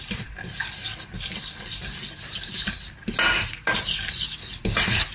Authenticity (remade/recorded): recorded